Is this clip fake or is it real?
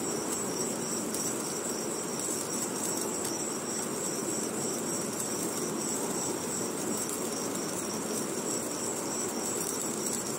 fake